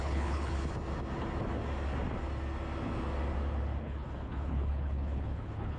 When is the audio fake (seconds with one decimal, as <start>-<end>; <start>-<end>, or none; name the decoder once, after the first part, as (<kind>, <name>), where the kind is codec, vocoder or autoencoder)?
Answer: 0.0-0.5 (codec, HILCodec); 3.8-5.8